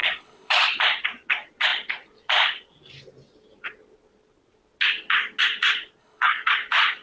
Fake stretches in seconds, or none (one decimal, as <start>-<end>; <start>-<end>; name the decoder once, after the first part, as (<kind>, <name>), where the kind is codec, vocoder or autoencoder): 0.0-0.5 (codec, HILCodec); 6.0-6.5